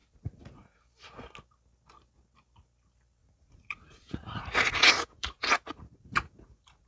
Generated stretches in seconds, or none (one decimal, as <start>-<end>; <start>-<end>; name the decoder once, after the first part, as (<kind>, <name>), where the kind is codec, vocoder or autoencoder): 0.0-0.8 (vocoder, Vocos); 3.2-6.9